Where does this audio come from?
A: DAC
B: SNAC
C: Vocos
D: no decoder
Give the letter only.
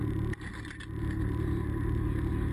D